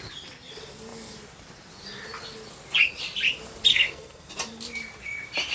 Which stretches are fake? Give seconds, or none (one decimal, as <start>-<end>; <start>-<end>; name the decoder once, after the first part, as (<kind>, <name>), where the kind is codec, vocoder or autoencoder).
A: 3.7-4.3 (codec, SNAC)